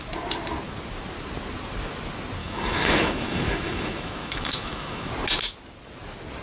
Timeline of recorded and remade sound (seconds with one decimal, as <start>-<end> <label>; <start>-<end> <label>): 0.0-2.4 recorded; 2.4-5.1 remade; 5.1-6.4 recorded